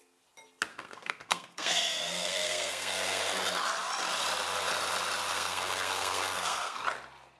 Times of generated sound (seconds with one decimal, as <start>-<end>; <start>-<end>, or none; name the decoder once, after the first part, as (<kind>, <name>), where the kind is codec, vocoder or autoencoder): 0.7-3.2 (codec, SNAC); 5.3-6.8